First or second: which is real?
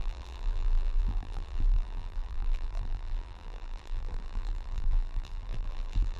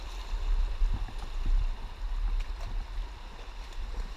second